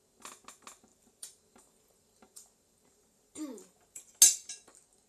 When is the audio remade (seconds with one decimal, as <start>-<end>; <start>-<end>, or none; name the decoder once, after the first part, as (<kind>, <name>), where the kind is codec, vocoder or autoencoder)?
0.9-4.0 (vocoder, BigVGAN v2)